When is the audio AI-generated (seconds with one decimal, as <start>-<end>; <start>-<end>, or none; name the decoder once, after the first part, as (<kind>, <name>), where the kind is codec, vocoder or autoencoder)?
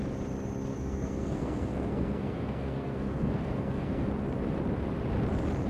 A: 0.7-4.1 (codec, SNAC)